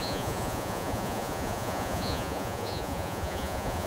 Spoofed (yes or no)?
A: yes